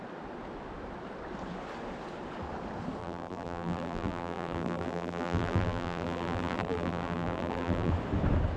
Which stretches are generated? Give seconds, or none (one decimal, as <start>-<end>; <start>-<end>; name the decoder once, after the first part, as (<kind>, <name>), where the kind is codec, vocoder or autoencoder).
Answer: 3.0-7.9 (vocoder, BigVGAN v2)